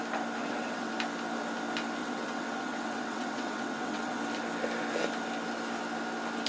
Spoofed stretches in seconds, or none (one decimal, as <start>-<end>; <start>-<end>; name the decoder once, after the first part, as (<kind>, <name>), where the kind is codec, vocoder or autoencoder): 0.4-0.9 (vocoder, WaveNeXt); 2.0-4.2